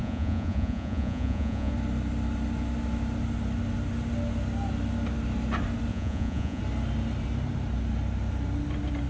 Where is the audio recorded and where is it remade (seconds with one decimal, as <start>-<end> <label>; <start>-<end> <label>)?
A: 0.0-1.7 remade; 1.7-5.9 recorded; 5.9-6.6 remade; 6.6-9.1 recorded